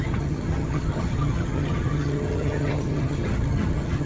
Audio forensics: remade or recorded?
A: remade